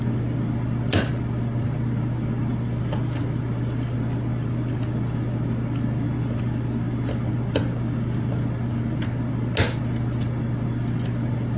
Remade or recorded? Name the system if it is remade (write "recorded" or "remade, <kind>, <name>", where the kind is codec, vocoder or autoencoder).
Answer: recorded